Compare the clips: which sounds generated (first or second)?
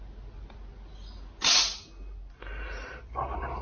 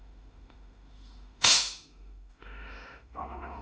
second